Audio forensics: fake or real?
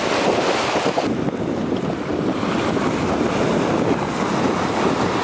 real